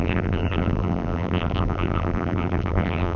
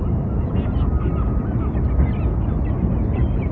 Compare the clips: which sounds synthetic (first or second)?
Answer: first